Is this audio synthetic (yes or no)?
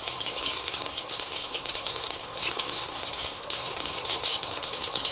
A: yes